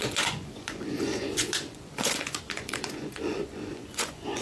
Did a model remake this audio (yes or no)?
yes